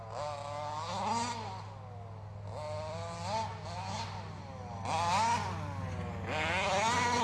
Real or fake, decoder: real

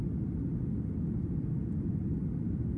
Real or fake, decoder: fake, vocoder, BigVGAN v2